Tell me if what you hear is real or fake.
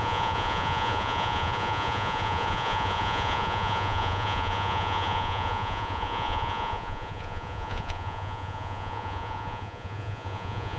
fake